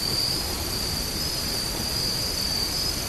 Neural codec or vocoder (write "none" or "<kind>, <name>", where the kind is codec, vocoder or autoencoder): vocoder, BigVGAN v2